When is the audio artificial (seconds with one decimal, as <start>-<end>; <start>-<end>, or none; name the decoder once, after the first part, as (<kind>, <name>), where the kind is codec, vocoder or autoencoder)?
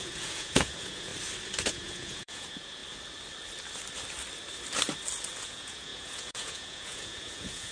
0.0-1.1 (vocoder, Vocos); 1.7-2.8; 5.4-7.7